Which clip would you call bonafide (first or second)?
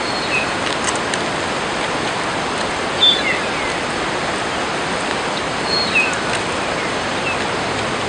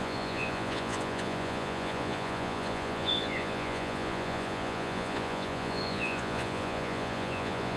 first